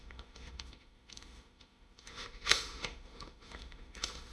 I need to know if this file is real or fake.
fake